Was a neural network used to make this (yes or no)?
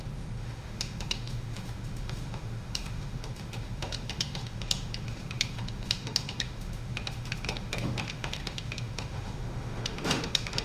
yes